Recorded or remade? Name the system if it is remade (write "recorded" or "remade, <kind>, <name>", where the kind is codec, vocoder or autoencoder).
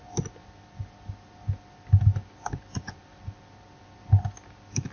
recorded